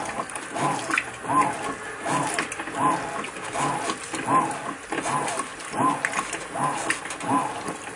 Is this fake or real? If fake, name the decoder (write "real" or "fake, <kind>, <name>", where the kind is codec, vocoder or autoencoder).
real